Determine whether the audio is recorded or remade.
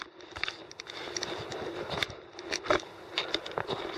recorded